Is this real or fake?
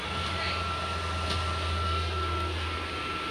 real